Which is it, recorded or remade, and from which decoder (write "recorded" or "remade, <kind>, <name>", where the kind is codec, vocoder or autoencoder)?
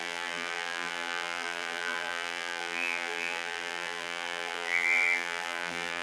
remade, vocoder, BigVGAN v2